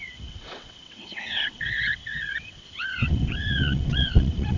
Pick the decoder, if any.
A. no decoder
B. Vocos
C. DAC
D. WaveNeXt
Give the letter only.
D